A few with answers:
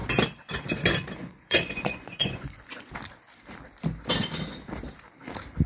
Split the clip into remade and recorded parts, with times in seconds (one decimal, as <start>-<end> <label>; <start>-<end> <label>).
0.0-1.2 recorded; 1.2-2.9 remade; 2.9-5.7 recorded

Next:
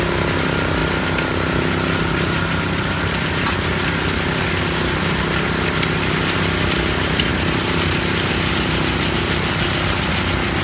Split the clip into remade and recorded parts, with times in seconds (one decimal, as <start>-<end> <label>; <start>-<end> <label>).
0.0-10.6 recorded

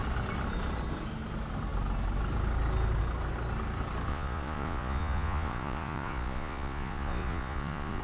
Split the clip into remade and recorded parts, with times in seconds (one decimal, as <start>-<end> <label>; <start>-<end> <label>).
0.0-4.1 recorded; 4.1-8.0 remade

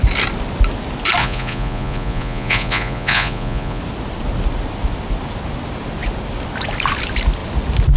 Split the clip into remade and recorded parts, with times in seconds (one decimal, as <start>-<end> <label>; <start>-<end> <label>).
0.0-1.2 recorded; 1.2-3.8 remade; 3.8-8.0 recorded

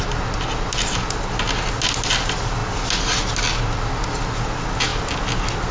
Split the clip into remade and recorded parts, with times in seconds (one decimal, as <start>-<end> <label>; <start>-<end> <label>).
0.0-5.7 recorded